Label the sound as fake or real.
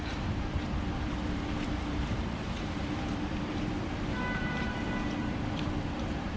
fake